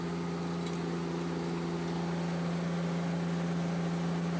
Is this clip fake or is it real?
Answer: real